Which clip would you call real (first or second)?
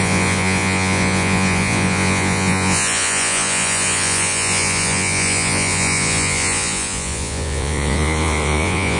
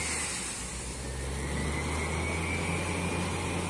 second